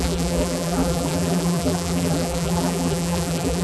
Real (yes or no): no